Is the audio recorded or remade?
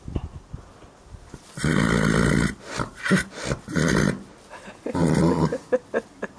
recorded